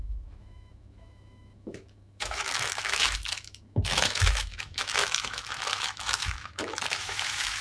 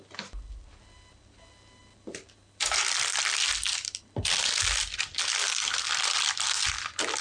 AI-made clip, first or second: first